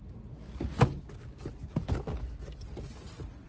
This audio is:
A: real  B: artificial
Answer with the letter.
A